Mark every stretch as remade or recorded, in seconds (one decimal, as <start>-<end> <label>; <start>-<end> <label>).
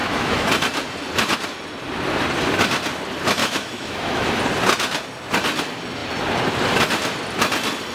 0.0-0.5 remade; 0.5-3.4 recorded; 3.4-4.4 remade; 4.4-7.9 recorded